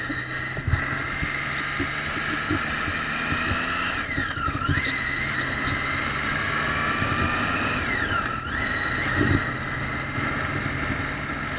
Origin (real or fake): real